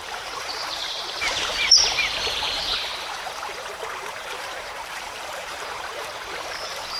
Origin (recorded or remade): remade